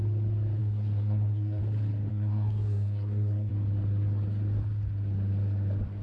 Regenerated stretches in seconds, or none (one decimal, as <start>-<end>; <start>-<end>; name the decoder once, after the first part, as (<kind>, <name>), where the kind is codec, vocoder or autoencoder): 0.6-1.6 (codec, SNAC); 2.1-3.5